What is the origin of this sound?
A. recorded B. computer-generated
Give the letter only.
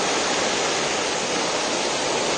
A